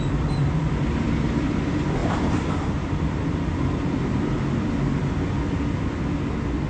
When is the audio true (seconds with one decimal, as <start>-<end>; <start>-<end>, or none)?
0.0-2.0; 3.2-6.7